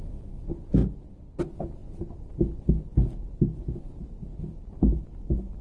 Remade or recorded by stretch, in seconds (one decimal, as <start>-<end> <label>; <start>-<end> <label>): 0.0-5.6 recorded